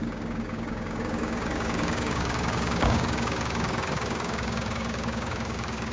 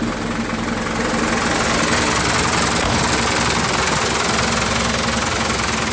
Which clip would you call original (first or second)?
second